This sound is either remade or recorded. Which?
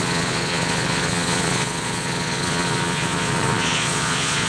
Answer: remade